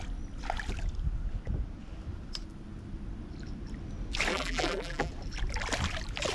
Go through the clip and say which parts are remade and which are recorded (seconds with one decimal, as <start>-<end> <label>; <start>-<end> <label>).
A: 0.0-4.3 recorded; 4.3-5.1 remade; 5.1-6.3 recorded